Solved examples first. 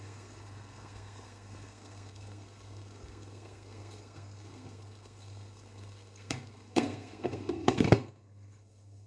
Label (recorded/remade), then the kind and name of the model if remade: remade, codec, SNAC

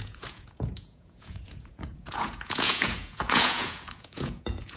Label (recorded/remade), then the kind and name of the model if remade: remade, vocoder, Vocos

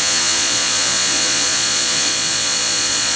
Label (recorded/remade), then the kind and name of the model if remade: remade, vocoder, Vocos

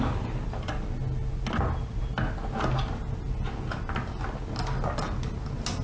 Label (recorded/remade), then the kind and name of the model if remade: recorded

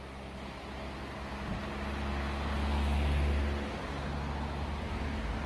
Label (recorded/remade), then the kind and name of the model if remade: recorded